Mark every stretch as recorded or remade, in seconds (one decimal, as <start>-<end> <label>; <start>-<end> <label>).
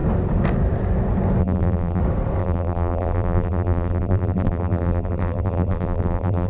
0.0-1.4 recorded; 1.4-2.0 remade; 2.0-2.4 recorded; 2.4-6.5 remade